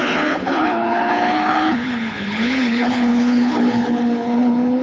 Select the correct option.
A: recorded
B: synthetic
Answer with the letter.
B